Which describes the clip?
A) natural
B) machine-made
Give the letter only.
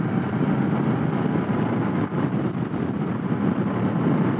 A